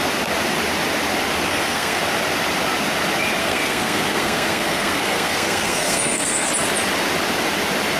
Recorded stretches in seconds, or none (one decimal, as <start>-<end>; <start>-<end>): 0.0-1.5; 2.0-3.4; 6.5-8.0